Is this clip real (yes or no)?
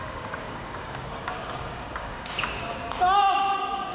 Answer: no